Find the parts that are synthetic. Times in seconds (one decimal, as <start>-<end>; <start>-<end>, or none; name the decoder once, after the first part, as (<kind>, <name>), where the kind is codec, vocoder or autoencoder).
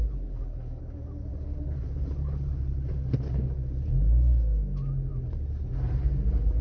0.0-0.8 (codec, HILCodec); 1.3-3.5